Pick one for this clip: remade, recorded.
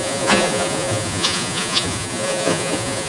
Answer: remade